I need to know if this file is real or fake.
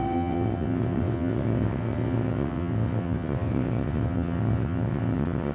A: fake